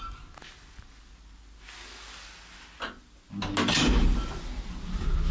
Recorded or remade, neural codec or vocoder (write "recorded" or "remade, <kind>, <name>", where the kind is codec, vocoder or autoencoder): recorded